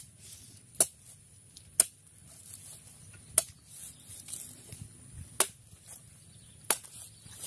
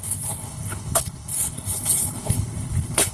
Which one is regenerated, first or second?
second